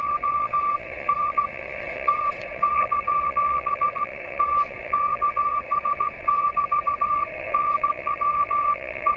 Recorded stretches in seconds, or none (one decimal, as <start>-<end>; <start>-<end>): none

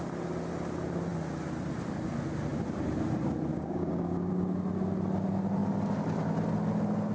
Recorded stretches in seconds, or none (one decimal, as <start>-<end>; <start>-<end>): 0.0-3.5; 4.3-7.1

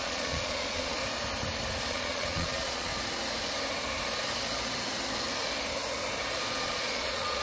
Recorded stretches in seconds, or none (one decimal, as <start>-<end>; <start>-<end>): 1.0-1.9; 2.9-6.6

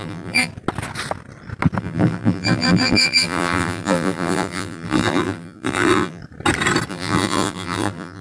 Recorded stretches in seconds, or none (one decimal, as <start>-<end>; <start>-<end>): 0.5-1.8; 6.2-6.9

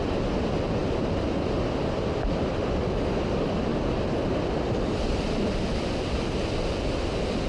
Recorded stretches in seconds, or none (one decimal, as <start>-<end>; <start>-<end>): 0.8-2.2; 3.7-4.8